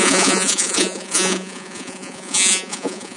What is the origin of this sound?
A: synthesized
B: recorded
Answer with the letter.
A